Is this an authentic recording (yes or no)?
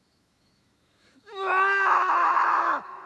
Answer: no